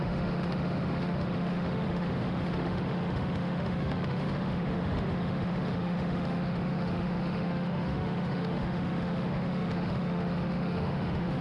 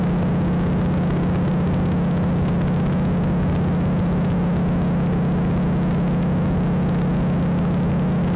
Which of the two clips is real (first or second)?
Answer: second